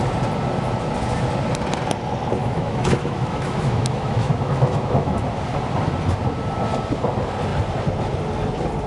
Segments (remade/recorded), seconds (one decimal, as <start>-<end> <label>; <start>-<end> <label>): 0.0-2.4 recorded; 2.4-5.2 remade; 5.2-8.9 recorded